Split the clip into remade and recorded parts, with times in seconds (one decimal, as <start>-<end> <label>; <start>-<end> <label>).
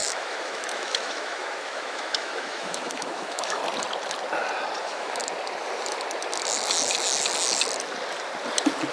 0.0-3.6 remade; 3.6-4.8 recorded; 4.8-5.2 remade; 5.2-8.9 recorded